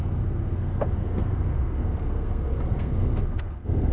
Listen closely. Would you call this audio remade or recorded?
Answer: remade